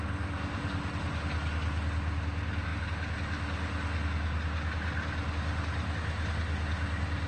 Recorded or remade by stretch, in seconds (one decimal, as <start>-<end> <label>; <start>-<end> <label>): 0.0-7.3 recorded